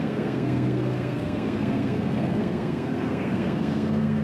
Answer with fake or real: fake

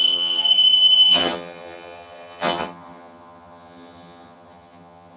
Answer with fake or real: fake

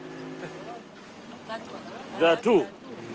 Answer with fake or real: real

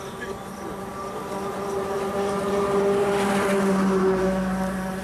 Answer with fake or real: real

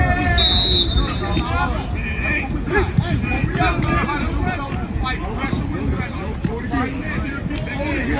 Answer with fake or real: real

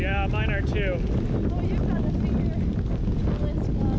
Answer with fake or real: real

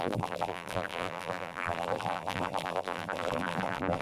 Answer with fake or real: fake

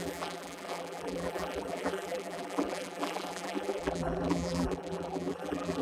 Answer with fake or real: fake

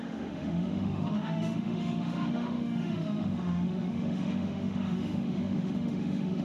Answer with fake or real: fake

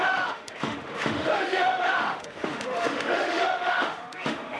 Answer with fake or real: fake